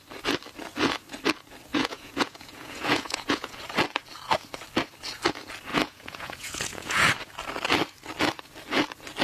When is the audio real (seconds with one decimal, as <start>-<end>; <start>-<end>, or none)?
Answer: 0.0-1.7; 3.6-5.7; 7.1-9.2